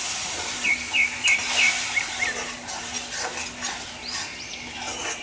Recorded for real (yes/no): yes